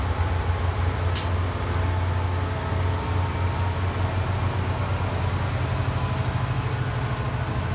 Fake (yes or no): no